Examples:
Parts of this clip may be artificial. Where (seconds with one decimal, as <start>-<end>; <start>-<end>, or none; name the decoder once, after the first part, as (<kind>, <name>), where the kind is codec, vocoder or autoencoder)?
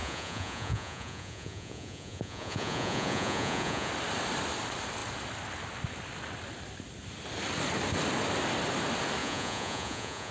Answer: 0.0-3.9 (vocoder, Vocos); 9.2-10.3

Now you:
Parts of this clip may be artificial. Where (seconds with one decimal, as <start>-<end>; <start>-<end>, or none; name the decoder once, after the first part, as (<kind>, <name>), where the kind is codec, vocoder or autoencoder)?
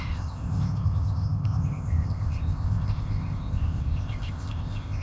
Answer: 0.0-5.0 (codec, ZipCodec)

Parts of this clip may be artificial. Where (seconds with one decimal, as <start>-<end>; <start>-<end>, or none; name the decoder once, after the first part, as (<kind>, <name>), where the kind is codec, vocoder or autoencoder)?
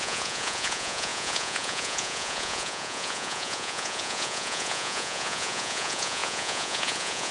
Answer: 0.0-7.3 (vocoder, Vocos)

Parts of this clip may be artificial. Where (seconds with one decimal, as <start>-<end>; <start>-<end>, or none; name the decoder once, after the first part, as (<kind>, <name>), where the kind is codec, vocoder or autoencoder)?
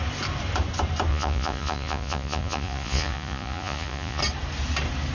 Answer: 1.1-4.2 (vocoder, Vocos)